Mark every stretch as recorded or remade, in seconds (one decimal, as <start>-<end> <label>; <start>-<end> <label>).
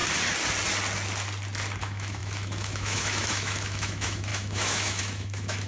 0.0-1.8 recorded; 1.8-5.7 remade